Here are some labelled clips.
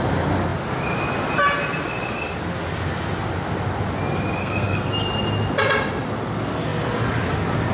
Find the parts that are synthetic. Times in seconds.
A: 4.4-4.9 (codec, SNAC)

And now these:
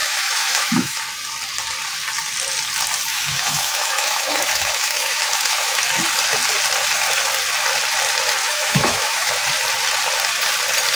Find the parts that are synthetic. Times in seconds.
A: 0.0-1.0 (autoencoder, DAC-VAE); 3.1-5.8; 8.4-9.3

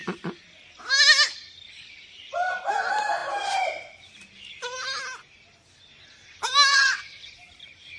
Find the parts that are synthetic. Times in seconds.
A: 6.7-7.3 (vocoder, WaveNeXt)